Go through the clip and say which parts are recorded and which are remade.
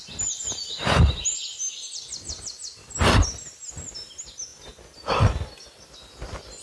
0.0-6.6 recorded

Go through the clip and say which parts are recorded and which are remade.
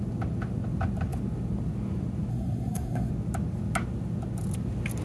0.0-2.3 recorded; 2.3-3.1 remade; 3.1-5.0 recorded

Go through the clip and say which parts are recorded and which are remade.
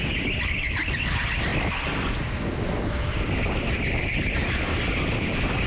0.0-5.7 recorded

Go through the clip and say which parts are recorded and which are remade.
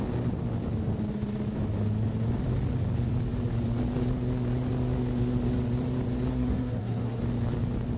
0.0-6.3 recorded; 6.3-7.2 remade; 7.2-8.0 recorded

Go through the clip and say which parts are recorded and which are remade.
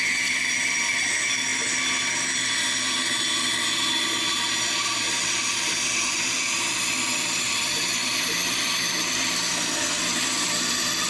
0.0-9.5 recorded; 9.5-10.0 remade; 10.0-11.1 recorded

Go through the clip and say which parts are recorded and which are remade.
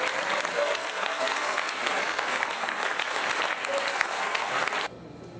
0.0-0.5 recorded; 0.5-3.2 remade; 3.2-3.9 recorded; 3.9-4.6 remade; 4.6-5.4 recorded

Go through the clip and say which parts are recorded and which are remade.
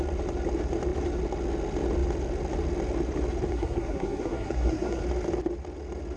0.0-3.5 recorded; 3.5-5.0 remade; 5.0-6.2 recorded